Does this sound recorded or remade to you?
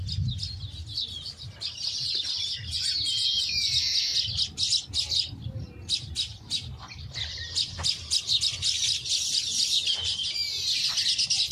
recorded